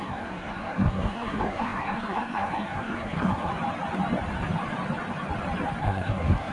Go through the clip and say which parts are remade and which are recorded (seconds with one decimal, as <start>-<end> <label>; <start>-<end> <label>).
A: 0.0-3.5 remade; 3.5-5.8 recorded; 5.8-6.5 remade